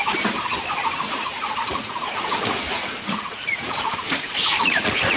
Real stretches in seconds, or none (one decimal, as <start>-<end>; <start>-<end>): 0.0-1.0